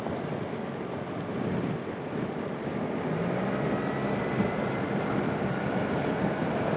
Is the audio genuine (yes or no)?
yes